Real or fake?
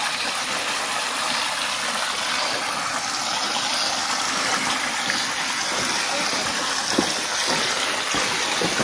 real